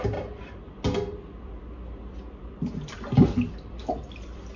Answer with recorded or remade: recorded